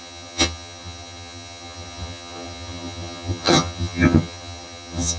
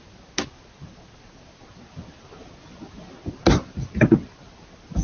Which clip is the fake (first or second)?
first